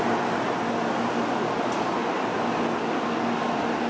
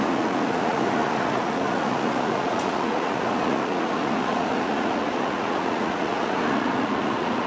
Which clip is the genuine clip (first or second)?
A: first